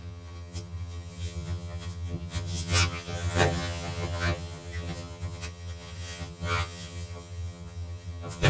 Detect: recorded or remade remade